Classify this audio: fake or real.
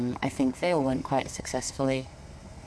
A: fake